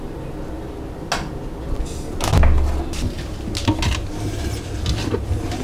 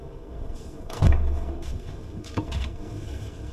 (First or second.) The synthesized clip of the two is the second